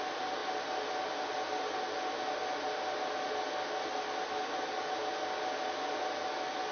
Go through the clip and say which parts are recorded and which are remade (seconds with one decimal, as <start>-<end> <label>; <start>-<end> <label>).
0.0-6.7 recorded